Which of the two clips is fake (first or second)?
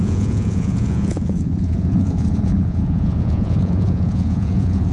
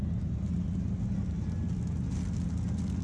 first